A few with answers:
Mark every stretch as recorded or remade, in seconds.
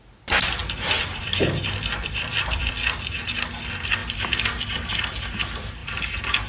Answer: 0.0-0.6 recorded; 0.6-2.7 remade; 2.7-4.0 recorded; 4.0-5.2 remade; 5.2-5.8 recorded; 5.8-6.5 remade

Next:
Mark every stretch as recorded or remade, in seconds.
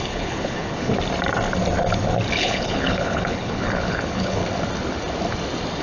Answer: 0.0-0.9 remade; 0.9-2.3 recorded; 2.3-4.4 remade; 4.4-5.8 recorded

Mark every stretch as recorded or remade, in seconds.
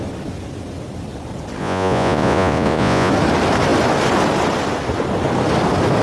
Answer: 0.0-1.6 recorded; 1.6-3.1 remade; 3.1-6.0 recorded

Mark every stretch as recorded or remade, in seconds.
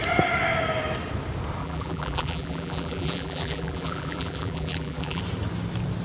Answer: 0.0-1.6 recorded; 1.6-5.2 remade; 5.2-6.0 recorded